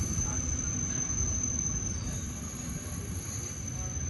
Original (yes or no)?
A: yes